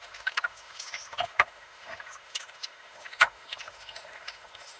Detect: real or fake fake